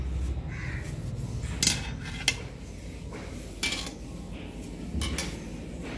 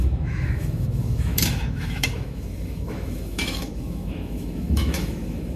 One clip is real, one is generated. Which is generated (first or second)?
second